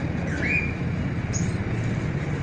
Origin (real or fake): real